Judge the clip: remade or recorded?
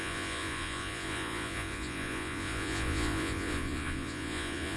remade